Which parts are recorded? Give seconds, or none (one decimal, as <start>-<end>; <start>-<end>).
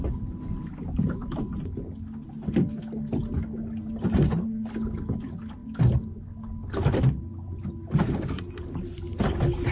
0.0-9.7